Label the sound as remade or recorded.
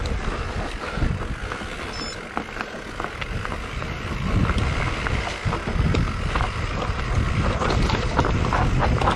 recorded